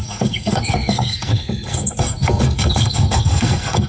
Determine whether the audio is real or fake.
fake